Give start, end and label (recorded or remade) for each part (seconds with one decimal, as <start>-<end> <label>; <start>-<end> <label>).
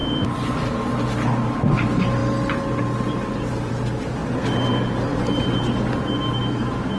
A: 0.0-0.6 remade; 0.6-2.2 recorded; 2.2-3.7 remade; 3.7-7.0 recorded